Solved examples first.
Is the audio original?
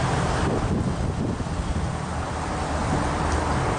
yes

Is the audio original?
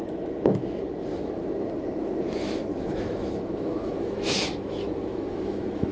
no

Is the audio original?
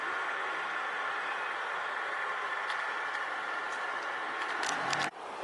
yes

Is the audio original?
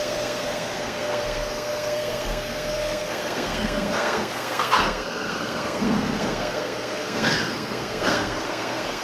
no